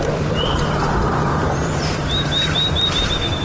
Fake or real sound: fake